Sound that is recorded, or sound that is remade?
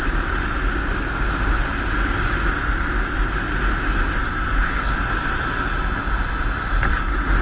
recorded